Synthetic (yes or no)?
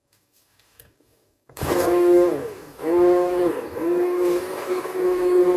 yes